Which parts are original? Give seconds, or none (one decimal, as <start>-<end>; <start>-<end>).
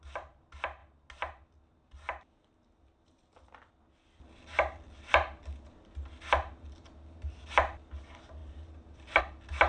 0.0-9.7